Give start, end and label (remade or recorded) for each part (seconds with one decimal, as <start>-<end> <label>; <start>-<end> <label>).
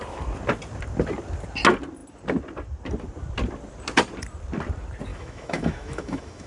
0.0-5.1 recorded; 5.1-6.5 remade